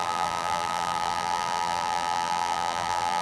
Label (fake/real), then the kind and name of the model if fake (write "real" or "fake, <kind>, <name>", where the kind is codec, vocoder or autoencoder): fake, vocoder, BigVGAN v2